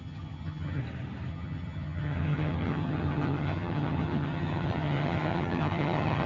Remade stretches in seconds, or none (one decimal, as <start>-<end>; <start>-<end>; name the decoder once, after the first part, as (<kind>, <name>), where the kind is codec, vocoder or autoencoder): 0.0-0.8 (vocoder, HiFi-GAN); 1.3-6.3